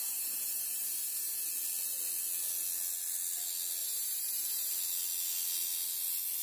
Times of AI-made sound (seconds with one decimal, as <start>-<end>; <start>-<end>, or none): 0.0-1.5; 3.8-4.7